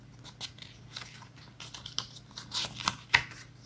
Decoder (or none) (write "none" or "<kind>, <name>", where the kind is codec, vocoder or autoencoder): none